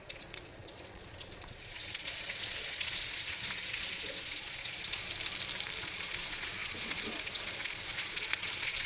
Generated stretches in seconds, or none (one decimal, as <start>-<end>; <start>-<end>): 0.0-5.1; 5.8-8.9